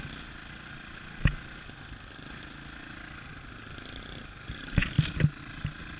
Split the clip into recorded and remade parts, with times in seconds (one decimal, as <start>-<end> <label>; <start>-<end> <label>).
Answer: 0.0-6.0 recorded